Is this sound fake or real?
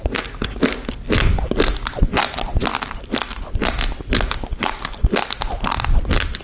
real